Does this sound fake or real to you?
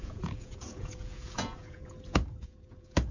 fake